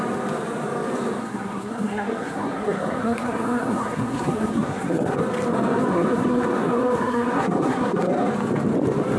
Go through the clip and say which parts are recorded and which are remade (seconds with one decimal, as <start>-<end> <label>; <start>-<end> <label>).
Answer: 0.0-1.2 recorded; 1.2-5.2 remade; 5.2-5.9 recorded; 5.9-8.3 remade; 8.3-9.2 recorded